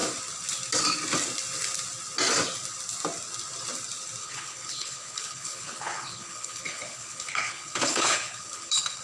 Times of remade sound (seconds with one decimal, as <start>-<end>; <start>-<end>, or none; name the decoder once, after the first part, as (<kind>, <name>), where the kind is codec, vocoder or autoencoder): 4.2-9.0 (codec, HILCodec)